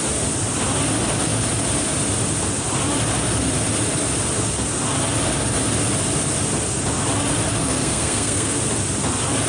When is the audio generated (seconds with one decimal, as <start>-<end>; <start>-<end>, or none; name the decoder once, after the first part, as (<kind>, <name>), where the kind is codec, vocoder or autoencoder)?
7.6-8.6 (codec, SNAC)